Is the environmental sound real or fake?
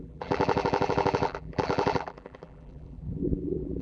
fake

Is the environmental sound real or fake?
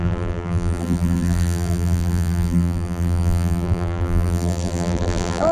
fake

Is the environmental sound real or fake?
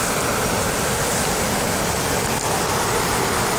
real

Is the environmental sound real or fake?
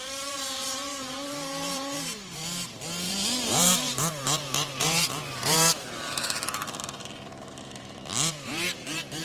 fake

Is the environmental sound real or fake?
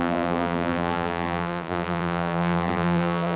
fake